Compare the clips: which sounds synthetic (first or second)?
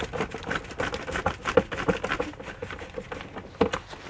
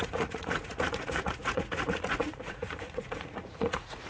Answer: second